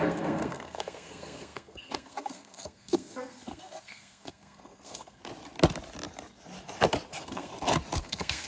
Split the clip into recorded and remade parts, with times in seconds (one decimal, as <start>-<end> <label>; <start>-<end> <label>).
0.0-5.2 remade; 5.2-7.1 recorded; 7.1-7.5 remade; 7.5-8.0 recorded; 8.0-8.5 remade